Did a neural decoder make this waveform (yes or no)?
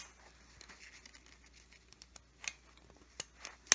no